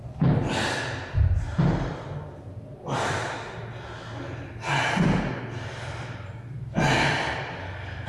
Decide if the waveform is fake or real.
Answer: real